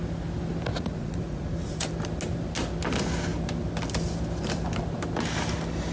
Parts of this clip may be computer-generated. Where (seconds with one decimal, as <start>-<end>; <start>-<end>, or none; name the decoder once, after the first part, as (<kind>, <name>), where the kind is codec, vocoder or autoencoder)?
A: 0.7-1.9 (vocoder, Vocos)